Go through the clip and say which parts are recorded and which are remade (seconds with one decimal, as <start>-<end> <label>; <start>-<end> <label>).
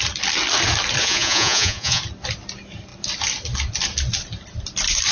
0.0-1.0 recorded; 1.0-2.0 remade; 2.0-5.1 recorded